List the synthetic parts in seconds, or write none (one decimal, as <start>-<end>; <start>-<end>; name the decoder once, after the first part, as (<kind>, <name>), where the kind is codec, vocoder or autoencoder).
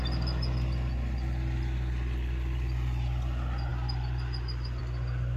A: none